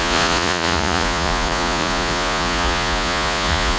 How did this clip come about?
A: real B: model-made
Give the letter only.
B